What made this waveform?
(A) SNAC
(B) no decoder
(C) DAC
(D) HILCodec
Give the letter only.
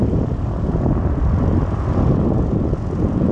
B